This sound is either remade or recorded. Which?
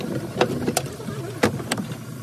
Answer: recorded